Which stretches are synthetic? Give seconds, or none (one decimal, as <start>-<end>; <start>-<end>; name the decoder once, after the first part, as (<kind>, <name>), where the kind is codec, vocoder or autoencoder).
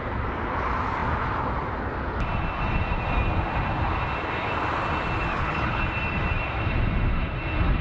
5.3-5.8 (codec, HILCodec)